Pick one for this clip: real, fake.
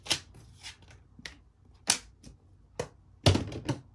real